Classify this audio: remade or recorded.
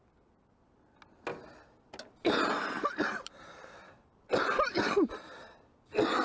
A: recorded